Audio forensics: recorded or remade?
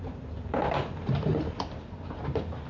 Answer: remade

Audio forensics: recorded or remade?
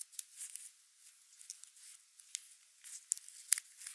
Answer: recorded